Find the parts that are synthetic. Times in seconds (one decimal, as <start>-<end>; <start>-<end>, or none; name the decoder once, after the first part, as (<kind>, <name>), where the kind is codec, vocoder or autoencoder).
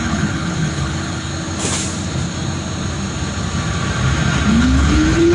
0.0-1.3 (codec, HILCodec); 4.5-5.3